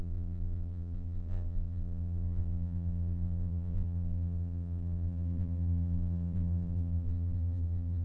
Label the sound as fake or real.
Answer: fake